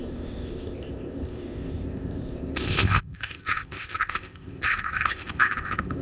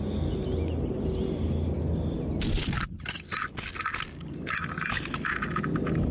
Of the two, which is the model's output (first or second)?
first